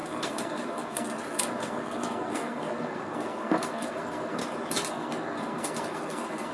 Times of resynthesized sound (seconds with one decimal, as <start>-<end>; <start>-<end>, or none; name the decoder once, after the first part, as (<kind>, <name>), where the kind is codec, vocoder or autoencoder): 0.0-4.4 (codec, SNAC); 4.9-6.5

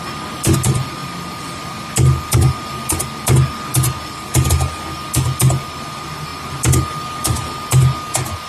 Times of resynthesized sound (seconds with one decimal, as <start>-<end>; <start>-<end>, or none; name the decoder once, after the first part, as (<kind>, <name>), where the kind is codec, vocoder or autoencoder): none

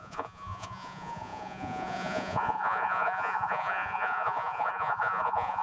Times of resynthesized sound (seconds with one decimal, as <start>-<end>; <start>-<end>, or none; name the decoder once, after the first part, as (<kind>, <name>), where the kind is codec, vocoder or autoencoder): 0.0-5.6 (vocoder, Vocos)

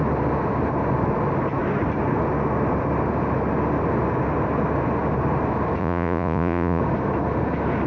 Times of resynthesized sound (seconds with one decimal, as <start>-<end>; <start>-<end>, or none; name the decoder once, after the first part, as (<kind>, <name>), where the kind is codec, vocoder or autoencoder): 5.8-6.8 (vocoder, Vocos)

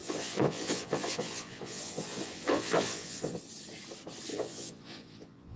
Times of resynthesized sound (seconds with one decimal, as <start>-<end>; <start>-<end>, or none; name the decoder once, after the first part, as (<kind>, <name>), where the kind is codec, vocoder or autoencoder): 0.0-3.4 (vocoder, Vocos); 4.3-5.6